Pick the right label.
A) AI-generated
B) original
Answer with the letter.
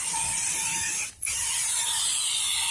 B